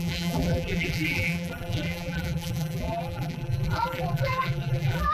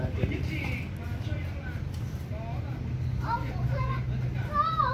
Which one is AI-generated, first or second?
first